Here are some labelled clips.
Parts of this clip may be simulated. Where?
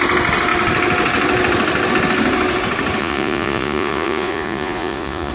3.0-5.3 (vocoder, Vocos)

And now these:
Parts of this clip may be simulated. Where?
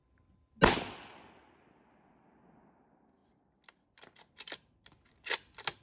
none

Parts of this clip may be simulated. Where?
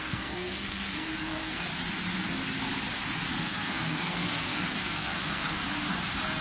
0.0-1.7 (codec, SNAC); 3.4-5.6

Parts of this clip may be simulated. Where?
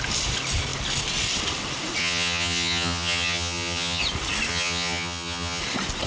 2.0-4.0 (vocoder, HiFi-GAN); 4.5-5.6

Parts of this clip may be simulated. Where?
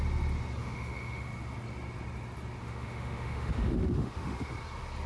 0.6-1.3 (autoencoder, DAC-VAE); 2.6-4.5